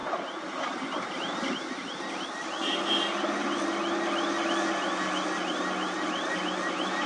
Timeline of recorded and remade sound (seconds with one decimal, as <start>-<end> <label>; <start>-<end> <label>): 0.0-7.1 recorded